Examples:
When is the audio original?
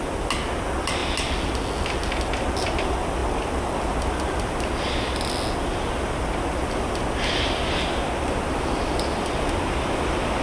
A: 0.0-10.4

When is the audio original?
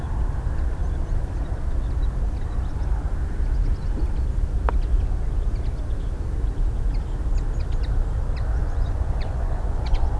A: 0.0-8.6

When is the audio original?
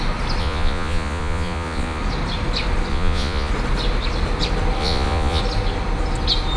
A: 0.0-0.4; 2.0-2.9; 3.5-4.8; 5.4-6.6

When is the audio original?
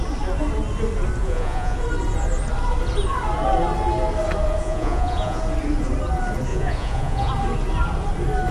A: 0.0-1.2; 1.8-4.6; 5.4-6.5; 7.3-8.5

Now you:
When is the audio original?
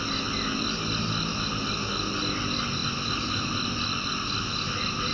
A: 0.0-5.1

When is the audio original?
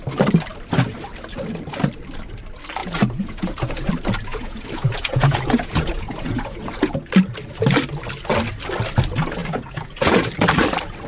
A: 0.0-2.8; 3.9-4.3; 7.1-9.4; 10.3-11.1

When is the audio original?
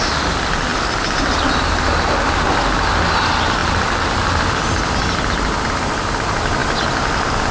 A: 0.0-7.5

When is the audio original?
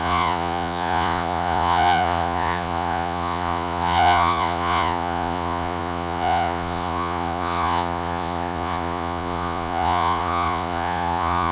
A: none